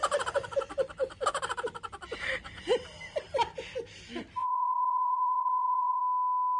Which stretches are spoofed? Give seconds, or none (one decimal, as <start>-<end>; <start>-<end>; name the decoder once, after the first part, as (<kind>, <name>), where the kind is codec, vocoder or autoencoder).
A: 4.4-6.0 (vocoder, Vocos)